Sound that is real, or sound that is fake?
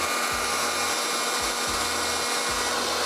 real